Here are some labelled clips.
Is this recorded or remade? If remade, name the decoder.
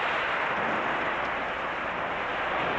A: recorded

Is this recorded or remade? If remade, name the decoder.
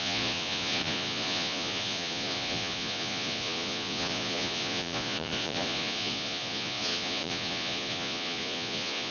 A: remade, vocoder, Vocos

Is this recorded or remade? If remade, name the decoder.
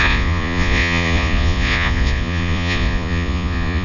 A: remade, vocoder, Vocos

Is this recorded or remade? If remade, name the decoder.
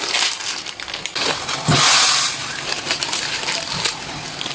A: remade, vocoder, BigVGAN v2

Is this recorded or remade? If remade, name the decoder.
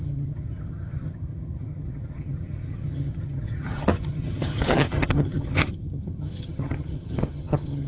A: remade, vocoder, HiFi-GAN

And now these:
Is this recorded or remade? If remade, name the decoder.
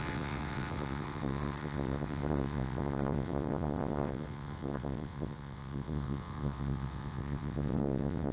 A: remade, vocoder, WaveNeXt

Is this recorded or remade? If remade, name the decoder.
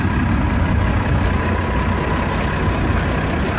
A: recorded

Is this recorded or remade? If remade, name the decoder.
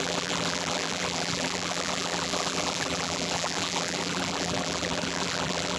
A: remade, vocoder, BigVGAN v2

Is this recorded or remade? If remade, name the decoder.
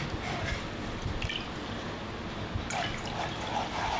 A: recorded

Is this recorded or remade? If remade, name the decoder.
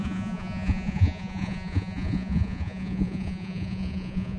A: remade, vocoder, Vocos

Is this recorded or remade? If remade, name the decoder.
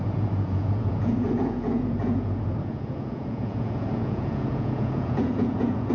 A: remade, vocoder, Vocos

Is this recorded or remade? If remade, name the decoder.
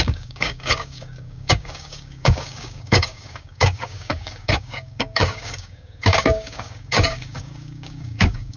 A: remade, codec, DAC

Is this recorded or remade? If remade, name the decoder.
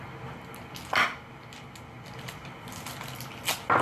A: recorded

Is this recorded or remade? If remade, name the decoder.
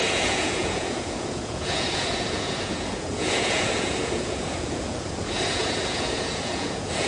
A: remade, vocoder, Vocos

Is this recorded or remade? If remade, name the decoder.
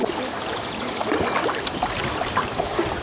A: recorded